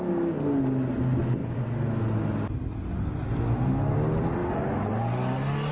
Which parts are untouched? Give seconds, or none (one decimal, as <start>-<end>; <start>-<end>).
0.0-5.7

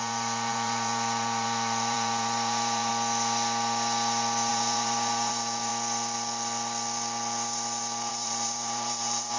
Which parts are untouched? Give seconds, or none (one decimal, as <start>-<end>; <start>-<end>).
2.9-4.5; 5.7-8.1

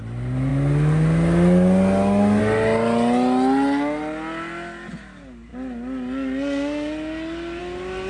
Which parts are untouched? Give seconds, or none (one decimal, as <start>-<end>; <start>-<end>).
0.0-8.1

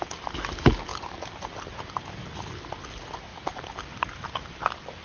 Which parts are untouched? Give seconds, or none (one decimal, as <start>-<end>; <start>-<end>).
0.0-5.0